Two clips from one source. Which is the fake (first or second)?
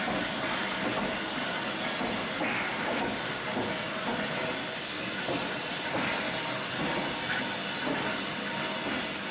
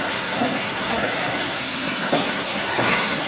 second